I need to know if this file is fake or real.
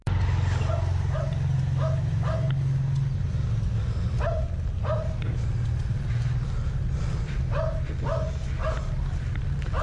real